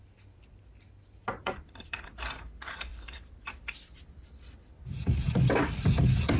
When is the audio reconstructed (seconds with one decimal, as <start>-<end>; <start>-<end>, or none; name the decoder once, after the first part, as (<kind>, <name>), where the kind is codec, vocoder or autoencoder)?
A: 1.4-2.2 (vocoder, BigVGAN v2); 2.9-6.4